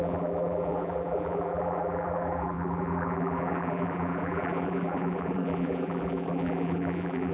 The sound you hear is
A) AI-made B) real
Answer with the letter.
A